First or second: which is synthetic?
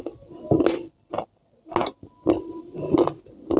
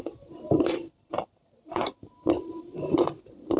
second